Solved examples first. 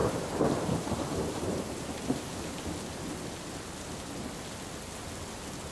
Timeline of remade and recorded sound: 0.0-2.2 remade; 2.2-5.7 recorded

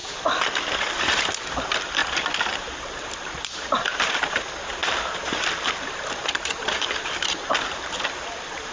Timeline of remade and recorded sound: 0.0-1.0 recorded; 1.0-2.0 remade; 2.0-3.0 recorded; 3.0-8.7 remade

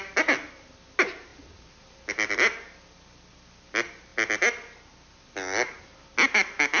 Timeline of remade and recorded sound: 0.0-6.8 recorded

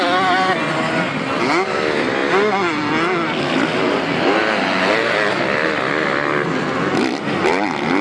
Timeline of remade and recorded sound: 0.0-8.0 recorded

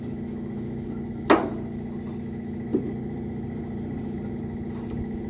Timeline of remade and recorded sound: 0.0-2.7 recorded; 2.7-4.3 remade; 4.3-5.3 recorded

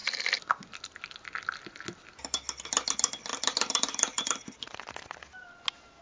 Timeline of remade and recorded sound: 0.0-3.3 recorded; 3.3-5.2 remade; 5.2-6.0 recorded

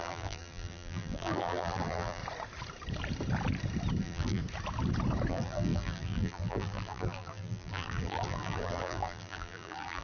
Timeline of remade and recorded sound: 0.0-2.2 remade; 2.2-4.0 recorded; 4.0-4.4 remade; 4.4-5.3 recorded; 5.3-10.0 remade